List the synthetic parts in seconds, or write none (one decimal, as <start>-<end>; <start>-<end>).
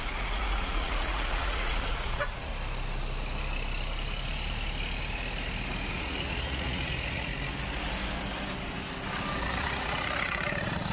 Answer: 0.0-2.5; 5.9-7.3; 9.5-10.9